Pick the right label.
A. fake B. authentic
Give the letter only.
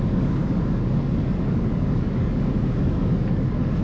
A